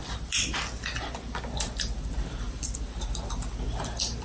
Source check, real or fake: real